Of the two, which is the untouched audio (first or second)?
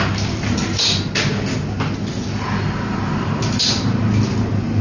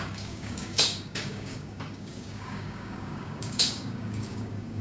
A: first